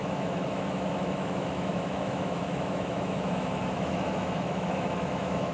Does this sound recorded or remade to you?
remade